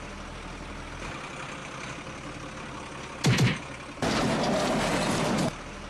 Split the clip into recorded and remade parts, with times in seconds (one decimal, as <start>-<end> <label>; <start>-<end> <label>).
0.0-5.9 recorded